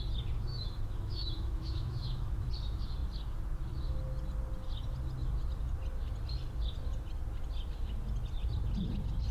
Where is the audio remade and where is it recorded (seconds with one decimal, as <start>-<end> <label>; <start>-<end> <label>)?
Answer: 0.0-0.5 recorded; 0.5-2.5 remade; 2.5-9.3 recorded